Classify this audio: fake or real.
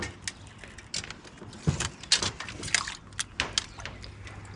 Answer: real